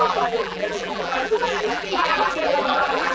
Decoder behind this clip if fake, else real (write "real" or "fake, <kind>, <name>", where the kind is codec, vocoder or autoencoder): fake, vocoder, BigVGAN v2